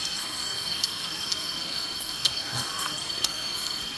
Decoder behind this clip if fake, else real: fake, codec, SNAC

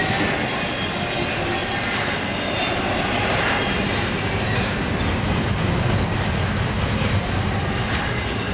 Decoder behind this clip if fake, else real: real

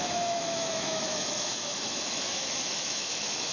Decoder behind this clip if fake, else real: fake, autoencoder, DAC-VAE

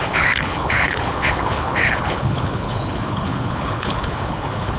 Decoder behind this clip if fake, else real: fake, codec, HILCodec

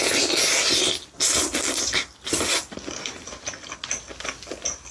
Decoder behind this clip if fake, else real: real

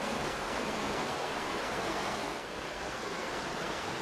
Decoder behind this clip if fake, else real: fake, codec, SNAC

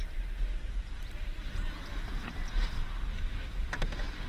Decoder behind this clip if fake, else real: real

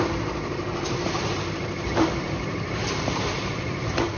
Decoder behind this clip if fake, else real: fake, vocoder, BigVGAN v2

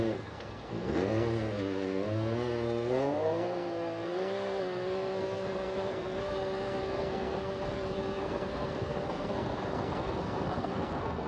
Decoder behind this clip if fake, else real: fake, codec, SNAC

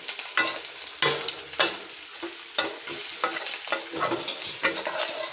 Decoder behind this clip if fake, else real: real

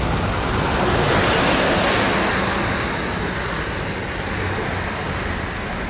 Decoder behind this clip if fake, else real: real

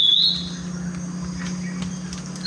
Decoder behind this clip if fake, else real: real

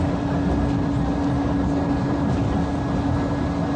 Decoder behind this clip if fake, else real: real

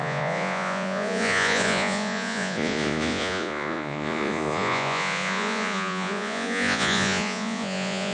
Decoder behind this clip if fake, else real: fake, vocoder, Vocos